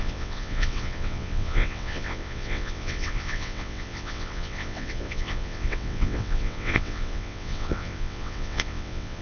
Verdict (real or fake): fake